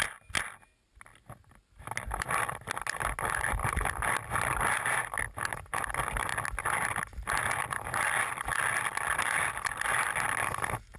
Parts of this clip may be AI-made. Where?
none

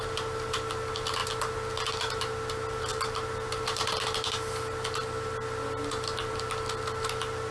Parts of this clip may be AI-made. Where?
none